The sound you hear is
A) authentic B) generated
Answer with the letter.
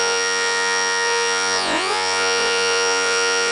B